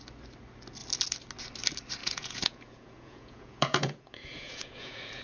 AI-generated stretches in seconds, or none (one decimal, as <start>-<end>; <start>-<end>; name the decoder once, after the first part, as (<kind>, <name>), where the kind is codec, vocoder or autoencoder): 2.0-5.2 (vocoder, Vocos)